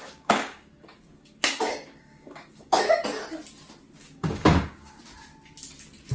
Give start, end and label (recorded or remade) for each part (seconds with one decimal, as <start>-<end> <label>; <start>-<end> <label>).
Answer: 0.0-2.8 remade; 2.8-4.0 recorded; 4.0-5.0 remade; 5.0-6.1 recorded